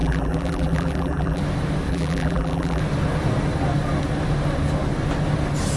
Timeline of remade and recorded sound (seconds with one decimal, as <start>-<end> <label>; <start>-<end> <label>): 0.0-1.4 remade; 1.4-1.9 recorded; 1.9-2.8 remade; 2.8-5.8 recorded